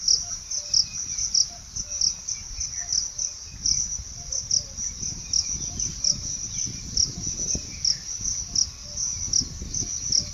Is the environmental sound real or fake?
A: real